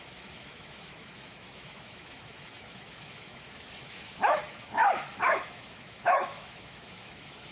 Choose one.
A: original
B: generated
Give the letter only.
B